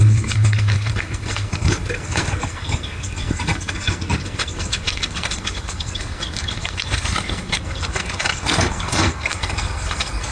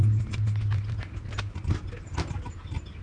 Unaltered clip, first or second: second